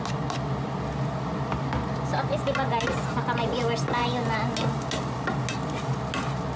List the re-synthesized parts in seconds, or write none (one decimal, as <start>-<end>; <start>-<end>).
none